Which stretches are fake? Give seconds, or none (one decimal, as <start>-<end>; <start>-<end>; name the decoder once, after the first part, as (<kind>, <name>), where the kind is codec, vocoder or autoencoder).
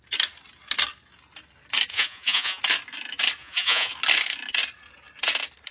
1.9-2.6 (vocoder, Vocos); 3.4-3.9